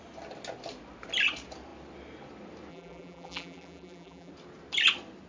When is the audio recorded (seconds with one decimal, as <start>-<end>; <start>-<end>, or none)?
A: 0.0-2.7; 4.3-5.3